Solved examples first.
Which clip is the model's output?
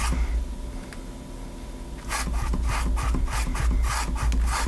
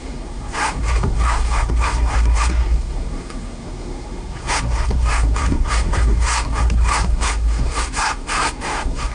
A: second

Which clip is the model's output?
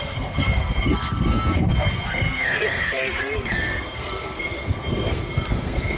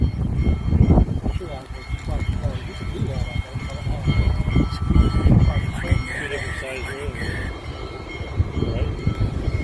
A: first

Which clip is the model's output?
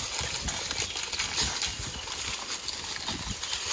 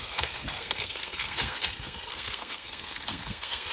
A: second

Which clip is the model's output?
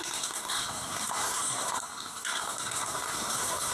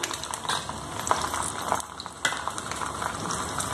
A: first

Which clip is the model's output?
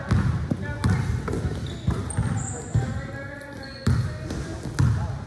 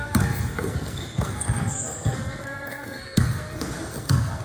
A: second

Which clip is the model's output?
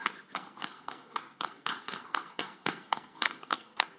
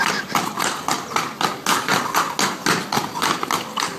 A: first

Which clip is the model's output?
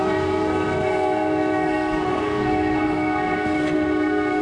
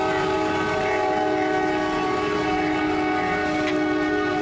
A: first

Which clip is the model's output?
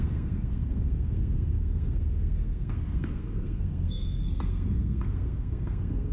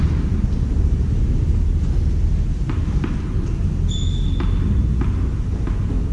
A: first